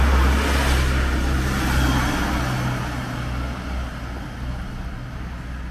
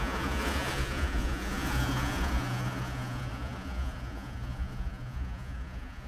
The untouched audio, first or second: first